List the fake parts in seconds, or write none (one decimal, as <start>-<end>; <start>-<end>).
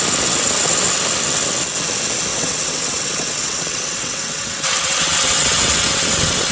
2.3-6.5